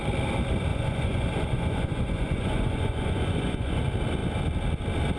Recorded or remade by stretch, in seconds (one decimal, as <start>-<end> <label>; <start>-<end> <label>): 0.0-0.7 recorded; 0.7-3.8 remade; 3.8-5.2 recorded